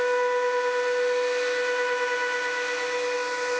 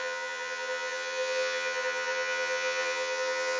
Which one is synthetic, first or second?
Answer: second